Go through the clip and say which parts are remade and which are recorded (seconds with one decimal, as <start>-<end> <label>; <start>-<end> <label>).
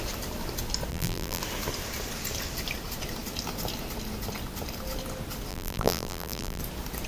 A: 0.0-0.9 recorded; 0.9-1.4 remade; 1.4-5.5 recorded; 5.5-6.6 remade; 6.6-7.1 recorded